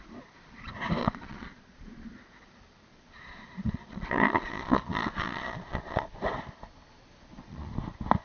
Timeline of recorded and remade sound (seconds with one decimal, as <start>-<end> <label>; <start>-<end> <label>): 0.0-1.0 recorded; 1.0-2.3 remade; 2.3-2.9 recorded; 2.9-6.1 remade; 6.1-6.9 recorded; 6.9-7.7 remade; 7.7-8.2 recorded